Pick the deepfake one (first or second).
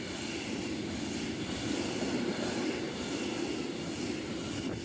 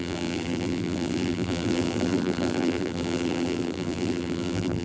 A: second